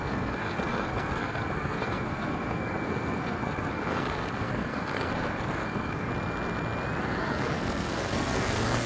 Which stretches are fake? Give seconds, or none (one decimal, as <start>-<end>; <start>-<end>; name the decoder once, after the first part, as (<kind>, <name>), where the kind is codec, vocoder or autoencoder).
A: 0.0-6.1 (codec, SNAC); 7.0-8.9